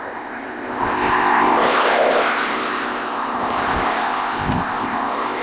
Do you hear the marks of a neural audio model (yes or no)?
yes